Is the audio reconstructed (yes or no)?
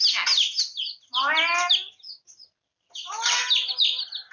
no